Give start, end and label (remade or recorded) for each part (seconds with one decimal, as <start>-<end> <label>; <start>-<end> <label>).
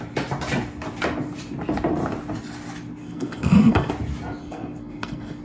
0.0-3.0 recorded; 3.0-3.9 remade; 3.9-4.4 recorded; 4.4-5.4 remade